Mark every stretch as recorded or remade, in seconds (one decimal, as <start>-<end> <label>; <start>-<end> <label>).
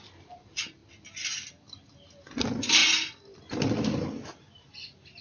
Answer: 0.0-5.2 recorded